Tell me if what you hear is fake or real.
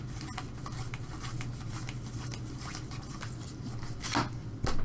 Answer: real